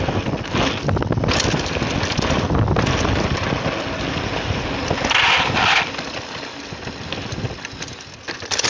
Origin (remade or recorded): recorded